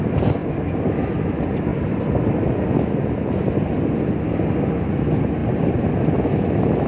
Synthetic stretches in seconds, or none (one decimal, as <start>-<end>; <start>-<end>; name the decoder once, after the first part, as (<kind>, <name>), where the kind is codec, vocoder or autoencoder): none

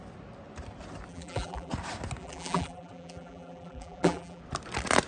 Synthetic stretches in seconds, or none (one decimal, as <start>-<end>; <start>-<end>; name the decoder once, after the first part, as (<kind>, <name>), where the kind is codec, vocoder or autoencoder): 1.1-1.7 (vocoder, BigVGAN v2); 2.2-4.4

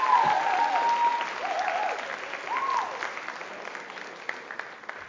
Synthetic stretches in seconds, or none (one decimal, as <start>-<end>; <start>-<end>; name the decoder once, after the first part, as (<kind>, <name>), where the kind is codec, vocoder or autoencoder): none

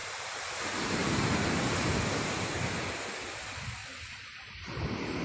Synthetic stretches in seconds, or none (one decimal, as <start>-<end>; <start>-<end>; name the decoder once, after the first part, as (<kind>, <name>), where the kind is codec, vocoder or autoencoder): 0.0-3.1 (vocoder, BigVGAN v2)

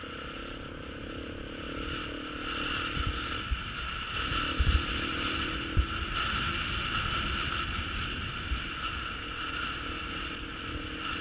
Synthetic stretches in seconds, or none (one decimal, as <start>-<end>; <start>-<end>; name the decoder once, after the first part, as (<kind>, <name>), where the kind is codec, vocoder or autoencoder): none

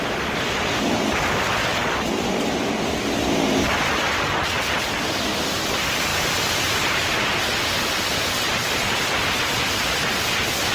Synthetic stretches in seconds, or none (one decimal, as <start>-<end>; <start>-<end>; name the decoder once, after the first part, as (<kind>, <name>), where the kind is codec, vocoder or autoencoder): none

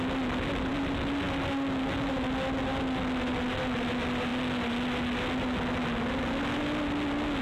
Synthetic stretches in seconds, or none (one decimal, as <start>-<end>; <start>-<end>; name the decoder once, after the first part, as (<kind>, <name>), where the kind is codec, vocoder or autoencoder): none